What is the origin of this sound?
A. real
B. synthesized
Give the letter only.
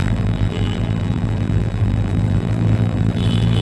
B